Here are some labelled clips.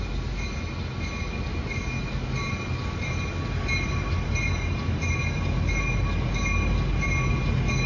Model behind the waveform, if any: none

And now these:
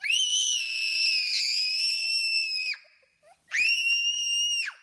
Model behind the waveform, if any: none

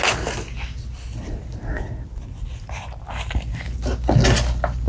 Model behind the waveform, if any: none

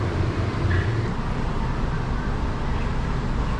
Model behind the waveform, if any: none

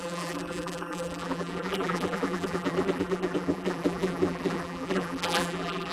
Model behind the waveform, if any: vocoder, BigVGAN v2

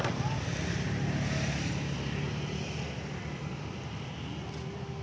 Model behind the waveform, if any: none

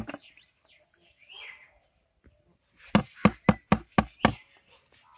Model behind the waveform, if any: none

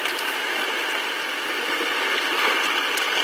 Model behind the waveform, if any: none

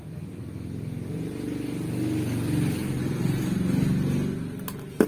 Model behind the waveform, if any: none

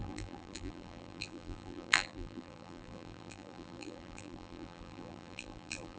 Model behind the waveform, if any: vocoder, BigVGAN v2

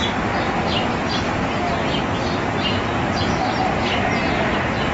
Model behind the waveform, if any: none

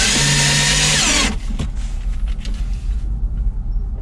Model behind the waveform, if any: none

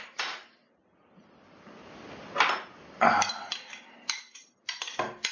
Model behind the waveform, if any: vocoder, BigVGAN v2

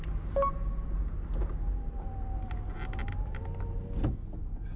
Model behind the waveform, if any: none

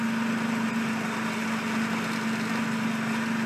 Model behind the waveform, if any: none